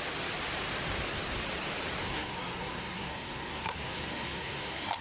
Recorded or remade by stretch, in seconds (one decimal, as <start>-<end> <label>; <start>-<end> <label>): 0.0-2.0 recorded; 2.0-5.0 remade